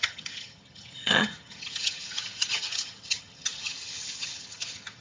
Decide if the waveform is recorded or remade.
remade